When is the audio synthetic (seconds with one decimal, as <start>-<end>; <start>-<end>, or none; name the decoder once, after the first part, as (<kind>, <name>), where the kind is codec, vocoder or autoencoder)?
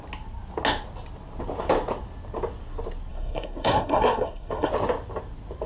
3.1-4.7 (codec, SNAC)